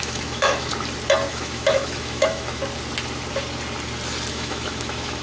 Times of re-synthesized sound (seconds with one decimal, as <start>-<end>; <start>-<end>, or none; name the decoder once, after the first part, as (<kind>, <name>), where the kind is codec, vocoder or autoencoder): 0.0-0.7 (autoencoder, DAC-VAE); 1.3-2.6; 4.3-5.2